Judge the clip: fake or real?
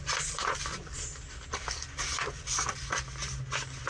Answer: real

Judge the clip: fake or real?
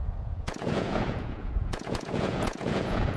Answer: fake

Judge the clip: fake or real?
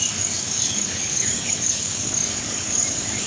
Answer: fake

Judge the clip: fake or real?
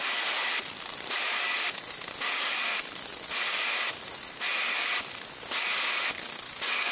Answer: real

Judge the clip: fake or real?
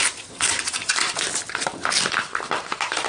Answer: real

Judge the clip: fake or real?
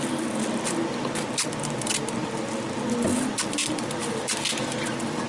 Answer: real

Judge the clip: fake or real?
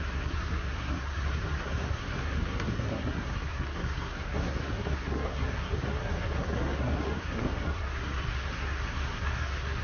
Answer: fake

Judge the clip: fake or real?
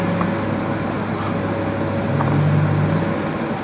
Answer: real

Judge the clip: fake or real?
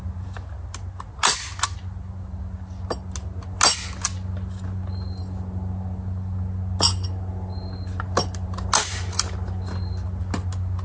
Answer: real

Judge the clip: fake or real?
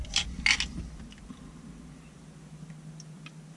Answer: real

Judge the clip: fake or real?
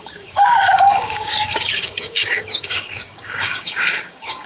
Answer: fake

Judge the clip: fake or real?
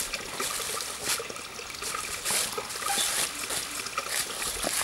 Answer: real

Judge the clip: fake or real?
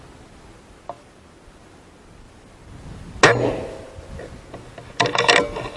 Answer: real